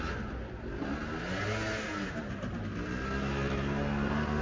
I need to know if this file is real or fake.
real